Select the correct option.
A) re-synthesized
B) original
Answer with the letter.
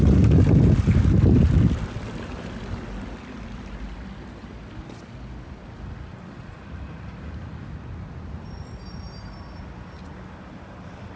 B